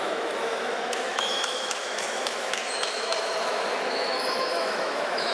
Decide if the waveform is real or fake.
fake